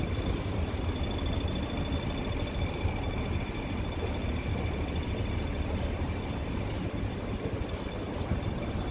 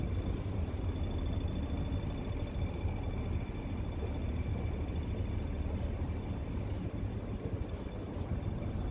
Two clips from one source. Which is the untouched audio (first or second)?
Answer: second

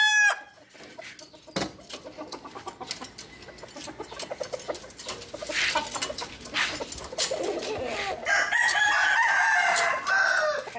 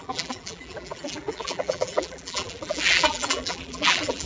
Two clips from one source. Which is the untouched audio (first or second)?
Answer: first